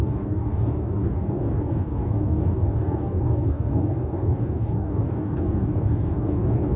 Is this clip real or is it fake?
fake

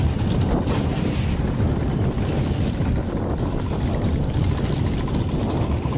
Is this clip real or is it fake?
real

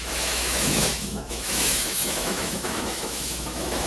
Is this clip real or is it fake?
fake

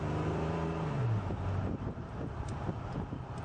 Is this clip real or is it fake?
fake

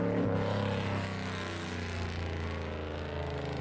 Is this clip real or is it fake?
real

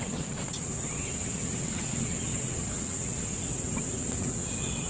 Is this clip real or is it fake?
fake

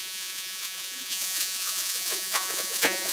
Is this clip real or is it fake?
fake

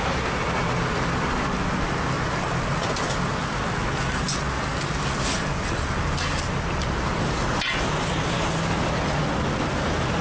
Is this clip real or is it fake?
real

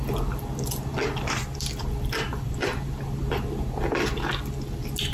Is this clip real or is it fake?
real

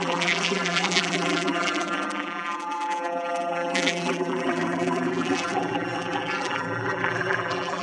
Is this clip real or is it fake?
fake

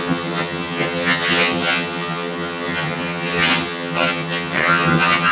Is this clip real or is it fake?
fake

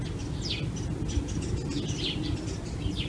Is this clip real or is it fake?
real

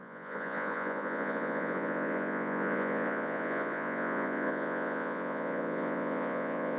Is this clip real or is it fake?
fake